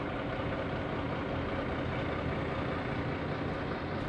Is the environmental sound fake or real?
real